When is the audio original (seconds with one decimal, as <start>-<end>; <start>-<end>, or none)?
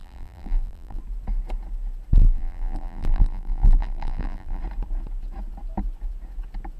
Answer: 1.0-2.2; 4.6-6.8